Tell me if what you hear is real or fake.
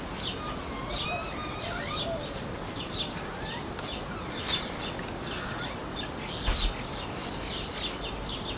real